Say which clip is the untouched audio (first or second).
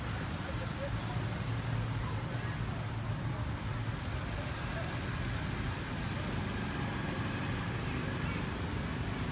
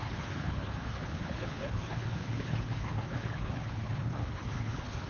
first